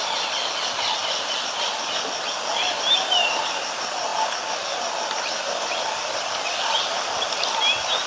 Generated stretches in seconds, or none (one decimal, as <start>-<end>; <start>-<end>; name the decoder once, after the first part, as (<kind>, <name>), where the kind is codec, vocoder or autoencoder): none